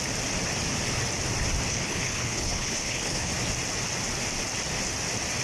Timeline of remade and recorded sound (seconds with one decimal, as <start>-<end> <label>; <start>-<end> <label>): 0.0-1.7 recorded; 1.7-3.3 remade; 3.3-5.4 recorded